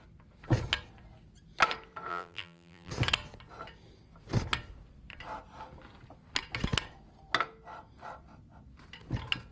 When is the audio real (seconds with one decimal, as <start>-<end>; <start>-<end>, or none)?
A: 0.0-2.1; 2.9-9.5